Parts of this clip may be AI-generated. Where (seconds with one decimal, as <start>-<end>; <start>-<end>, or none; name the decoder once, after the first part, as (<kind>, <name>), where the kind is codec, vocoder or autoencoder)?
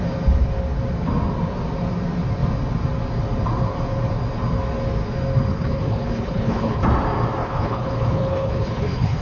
5.5-6.8 (codec, HILCodec); 7.4-9.2